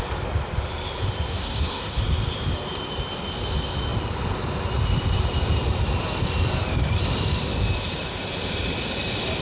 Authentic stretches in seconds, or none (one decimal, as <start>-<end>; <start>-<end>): 0.0-1.3; 2.0-9.4